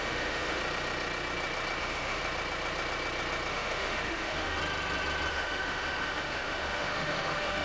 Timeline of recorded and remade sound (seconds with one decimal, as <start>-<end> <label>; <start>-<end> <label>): 0.0-0.6 remade; 0.6-1.8 recorded; 1.8-2.2 remade; 2.2-3.5 recorded; 3.5-4.6 remade; 4.6-5.3 recorded; 5.3-7.6 remade